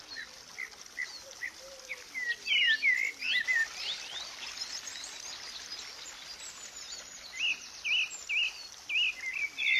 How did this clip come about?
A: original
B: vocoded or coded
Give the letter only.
A